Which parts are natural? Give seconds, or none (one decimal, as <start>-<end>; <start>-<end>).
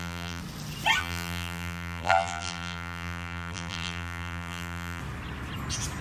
0.4-1.0; 5.0-6.0